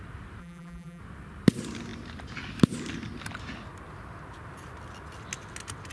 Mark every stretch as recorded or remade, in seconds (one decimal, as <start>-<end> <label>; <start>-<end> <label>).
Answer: 0.0-0.4 recorded; 0.4-1.0 remade; 1.0-5.9 recorded